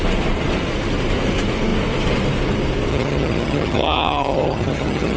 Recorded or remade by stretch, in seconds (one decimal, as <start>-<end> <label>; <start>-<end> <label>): 0.0-2.9 recorded; 2.9-5.2 remade